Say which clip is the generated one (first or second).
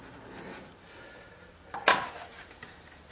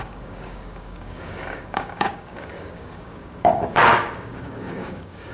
second